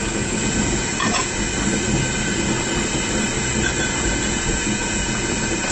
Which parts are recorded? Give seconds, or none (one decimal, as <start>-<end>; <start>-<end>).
1.5-3.9